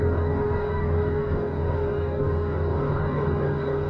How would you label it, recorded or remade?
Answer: remade